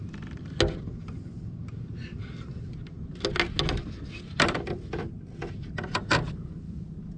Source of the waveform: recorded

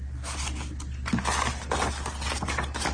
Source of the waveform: recorded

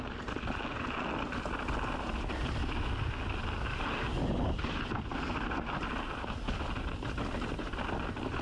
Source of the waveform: recorded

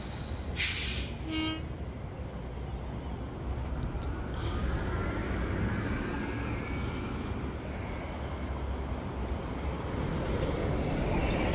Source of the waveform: recorded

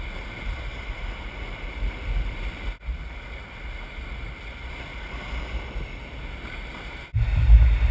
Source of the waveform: recorded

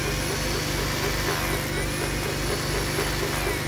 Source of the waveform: recorded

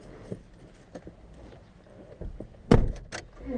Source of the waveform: recorded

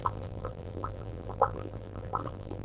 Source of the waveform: remade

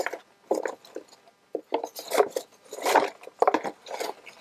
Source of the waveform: recorded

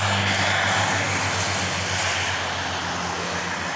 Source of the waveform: recorded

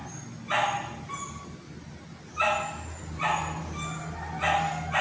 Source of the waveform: recorded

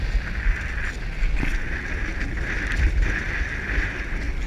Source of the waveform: recorded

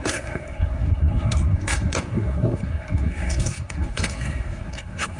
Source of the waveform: remade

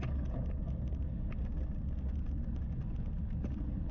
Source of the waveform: recorded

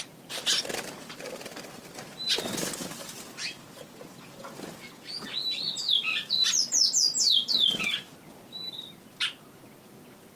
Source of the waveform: recorded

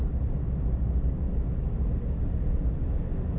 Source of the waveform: recorded